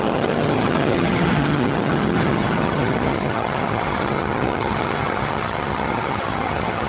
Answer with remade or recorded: remade